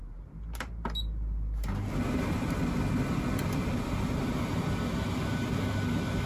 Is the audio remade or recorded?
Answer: recorded